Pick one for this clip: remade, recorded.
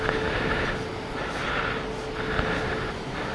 recorded